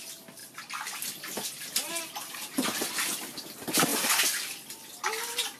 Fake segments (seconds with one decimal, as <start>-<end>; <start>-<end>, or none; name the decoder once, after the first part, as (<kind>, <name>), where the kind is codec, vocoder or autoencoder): none